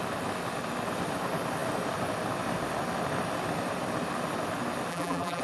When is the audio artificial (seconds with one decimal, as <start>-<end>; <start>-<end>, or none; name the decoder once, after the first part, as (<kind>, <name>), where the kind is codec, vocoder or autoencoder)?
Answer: 4.9-5.4 (vocoder, BigVGAN v2)